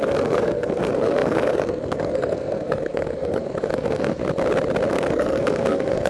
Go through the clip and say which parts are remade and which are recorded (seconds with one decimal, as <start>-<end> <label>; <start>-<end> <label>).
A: 0.0-4.2 remade; 4.2-4.9 recorded; 4.9-6.1 remade